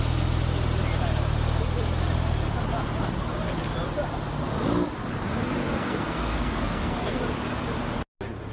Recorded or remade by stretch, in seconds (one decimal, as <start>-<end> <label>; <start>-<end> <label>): 0.0-5.7 recorded; 5.7-7.2 remade; 7.2-8.5 recorded